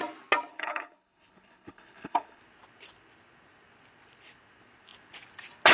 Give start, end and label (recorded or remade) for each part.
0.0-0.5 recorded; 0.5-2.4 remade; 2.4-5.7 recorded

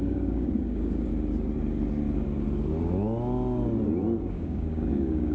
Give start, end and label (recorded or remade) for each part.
0.0-1.1 remade; 1.1-4.3 recorded; 4.3-5.3 remade

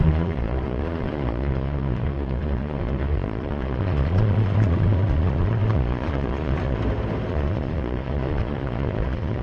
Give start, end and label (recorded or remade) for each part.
0.0-6.8 remade; 6.8-7.3 recorded; 7.3-9.4 remade

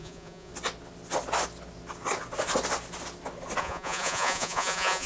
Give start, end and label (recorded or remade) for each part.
0.0-0.5 remade; 0.5-3.6 recorded; 3.6-5.1 remade